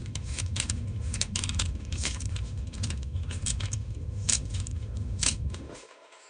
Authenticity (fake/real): fake